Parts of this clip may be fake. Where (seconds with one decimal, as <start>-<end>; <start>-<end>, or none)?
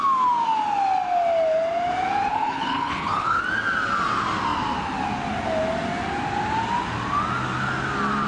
2.3-3.4